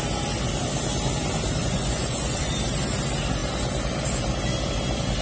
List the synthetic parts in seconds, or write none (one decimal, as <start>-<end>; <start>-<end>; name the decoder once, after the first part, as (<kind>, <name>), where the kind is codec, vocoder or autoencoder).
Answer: 1.6-2.5 (vocoder, Vocos)

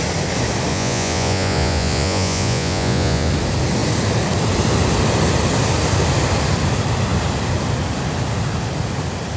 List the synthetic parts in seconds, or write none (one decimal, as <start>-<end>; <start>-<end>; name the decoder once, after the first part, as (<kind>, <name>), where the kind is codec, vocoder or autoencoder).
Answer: 0.7-3.3 (vocoder, Vocos)

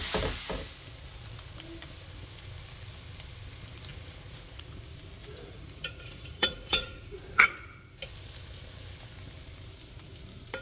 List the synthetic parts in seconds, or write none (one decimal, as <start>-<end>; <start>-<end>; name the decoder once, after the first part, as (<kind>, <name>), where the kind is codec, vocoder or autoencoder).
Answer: 3.9-4.7 (vocoder, Vocos); 5.2-7.7

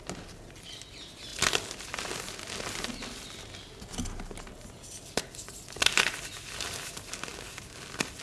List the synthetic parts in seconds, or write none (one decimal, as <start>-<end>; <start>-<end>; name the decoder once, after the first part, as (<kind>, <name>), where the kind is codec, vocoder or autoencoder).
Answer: none

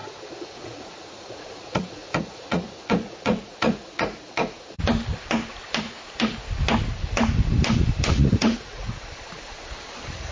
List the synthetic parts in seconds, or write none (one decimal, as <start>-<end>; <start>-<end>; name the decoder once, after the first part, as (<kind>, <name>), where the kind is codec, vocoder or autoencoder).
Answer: 0.0-4.8 (vocoder, Vocos); 8.1-9.1